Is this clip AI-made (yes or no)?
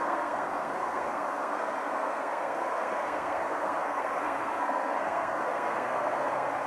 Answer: yes